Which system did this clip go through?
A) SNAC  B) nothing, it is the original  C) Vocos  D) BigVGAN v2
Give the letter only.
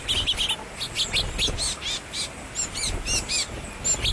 B